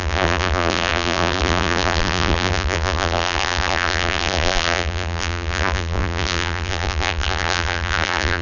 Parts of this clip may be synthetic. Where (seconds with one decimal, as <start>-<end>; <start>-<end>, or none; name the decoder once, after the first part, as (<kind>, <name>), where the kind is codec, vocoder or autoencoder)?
0.0-8.4 (vocoder, BigVGAN v2)